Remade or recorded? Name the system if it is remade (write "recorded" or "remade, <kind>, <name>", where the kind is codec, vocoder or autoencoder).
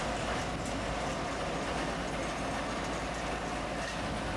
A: recorded